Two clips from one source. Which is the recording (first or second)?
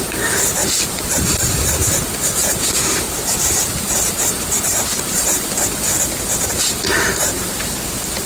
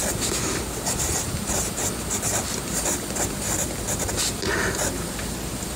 second